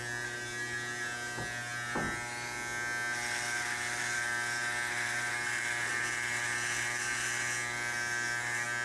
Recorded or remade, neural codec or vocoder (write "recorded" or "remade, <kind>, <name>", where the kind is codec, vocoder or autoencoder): recorded